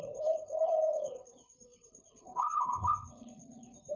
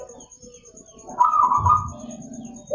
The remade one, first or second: first